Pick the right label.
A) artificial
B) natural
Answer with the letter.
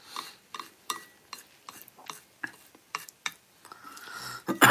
B